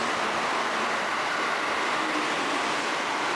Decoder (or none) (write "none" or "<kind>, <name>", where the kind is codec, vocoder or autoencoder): none